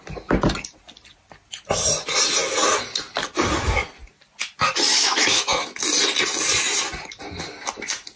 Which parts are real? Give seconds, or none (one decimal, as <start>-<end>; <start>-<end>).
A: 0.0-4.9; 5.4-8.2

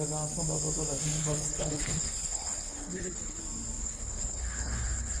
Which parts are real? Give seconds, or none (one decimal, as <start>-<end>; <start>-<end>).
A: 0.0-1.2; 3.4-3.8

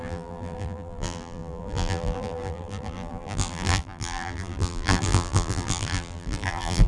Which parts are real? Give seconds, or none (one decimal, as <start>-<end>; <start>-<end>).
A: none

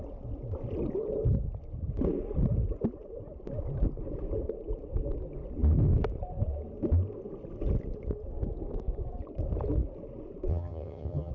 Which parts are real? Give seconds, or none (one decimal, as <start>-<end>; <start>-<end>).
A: 0.0-10.5